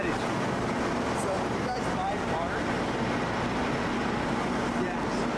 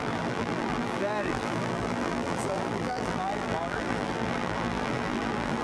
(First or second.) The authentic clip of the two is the first